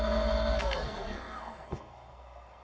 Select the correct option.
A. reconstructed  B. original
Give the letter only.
A